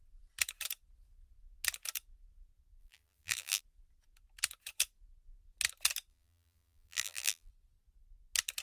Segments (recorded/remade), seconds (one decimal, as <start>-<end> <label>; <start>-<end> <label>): 0.0-2.8 recorded; 2.8-3.6 remade; 3.6-6.1 recorded; 6.1-7.5 remade; 7.5-8.6 recorded